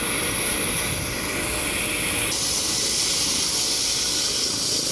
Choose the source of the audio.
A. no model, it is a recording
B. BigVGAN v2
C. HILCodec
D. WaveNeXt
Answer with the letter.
A